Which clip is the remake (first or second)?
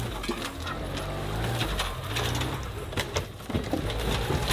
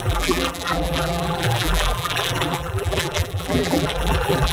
second